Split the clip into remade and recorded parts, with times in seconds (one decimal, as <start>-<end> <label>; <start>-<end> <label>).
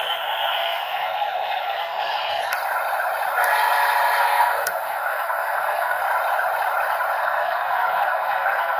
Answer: 0.0-2.4 remade; 2.4-4.2 recorded; 4.2-6.0 remade; 6.0-7.2 recorded; 7.2-8.8 remade